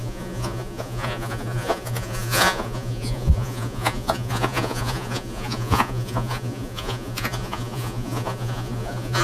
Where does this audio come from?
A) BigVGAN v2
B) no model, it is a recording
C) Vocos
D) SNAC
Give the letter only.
C